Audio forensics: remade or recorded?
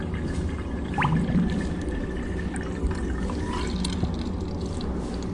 recorded